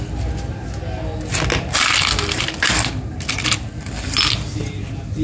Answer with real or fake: real